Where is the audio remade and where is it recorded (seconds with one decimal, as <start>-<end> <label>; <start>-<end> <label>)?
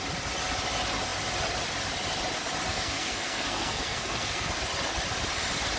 0.0-2.7 recorded; 2.7-4.5 remade; 4.5-5.8 recorded